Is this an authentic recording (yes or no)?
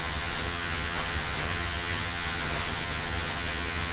no